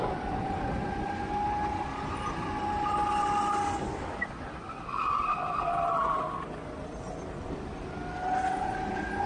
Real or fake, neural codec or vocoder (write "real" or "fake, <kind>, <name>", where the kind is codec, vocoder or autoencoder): real